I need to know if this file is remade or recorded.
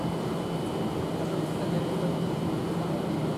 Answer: recorded